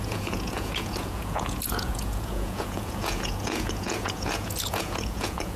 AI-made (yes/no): yes